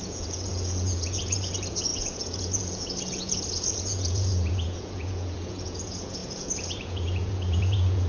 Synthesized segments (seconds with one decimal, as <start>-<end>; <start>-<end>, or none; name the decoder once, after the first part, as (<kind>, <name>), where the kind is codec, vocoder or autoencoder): 0.0-8.1 (vocoder, Vocos)